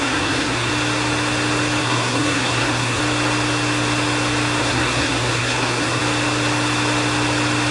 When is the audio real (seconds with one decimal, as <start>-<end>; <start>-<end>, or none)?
0.7-1.8; 3.0-4.6; 6.0-7.7